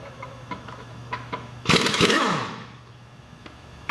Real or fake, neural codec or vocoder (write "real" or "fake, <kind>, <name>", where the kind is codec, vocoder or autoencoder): fake, autoencoder, DAC-VAE